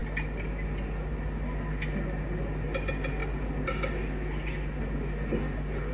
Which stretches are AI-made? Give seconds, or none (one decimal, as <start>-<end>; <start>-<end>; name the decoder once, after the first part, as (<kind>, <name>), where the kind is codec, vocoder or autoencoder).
none